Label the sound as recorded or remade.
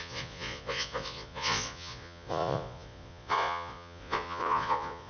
remade